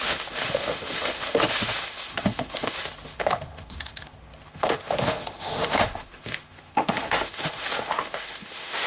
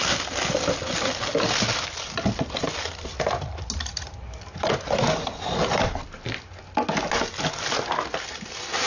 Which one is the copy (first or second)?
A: first